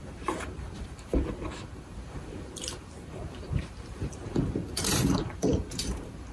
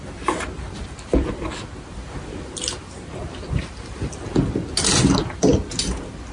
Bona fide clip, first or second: second